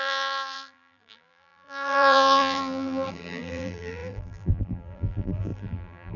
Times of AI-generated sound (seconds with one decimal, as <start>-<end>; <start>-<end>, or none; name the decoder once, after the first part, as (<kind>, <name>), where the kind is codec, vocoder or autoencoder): 0.0-6.2 (vocoder, BigVGAN v2)